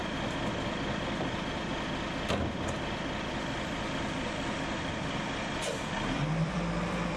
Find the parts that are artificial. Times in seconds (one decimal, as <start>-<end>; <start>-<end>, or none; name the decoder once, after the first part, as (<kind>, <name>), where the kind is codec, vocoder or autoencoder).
1.0-1.7 (vocoder, BigVGAN v2); 3.3-7.2